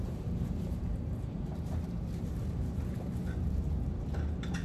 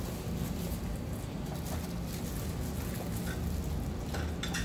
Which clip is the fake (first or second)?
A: first